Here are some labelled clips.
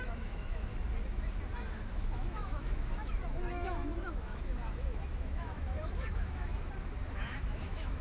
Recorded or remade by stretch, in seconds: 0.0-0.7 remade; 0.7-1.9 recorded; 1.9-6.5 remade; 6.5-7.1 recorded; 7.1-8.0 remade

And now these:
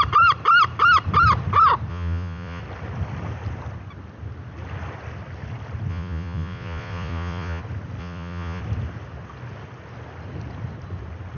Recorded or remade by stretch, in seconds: 0.0-1.9 recorded; 1.9-2.6 remade; 2.6-5.9 recorded; 5.9-7.6 remade; 7.6-8.0 recorded; 8.0-8.6 remade; 8.6-11.4 recorded

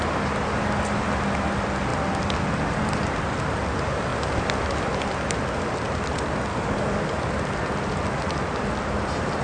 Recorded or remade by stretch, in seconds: 0.0-6.5 recorded; 6.5-7.3 remade; 7.3-9.4 recorded